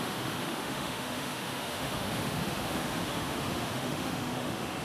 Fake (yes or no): yes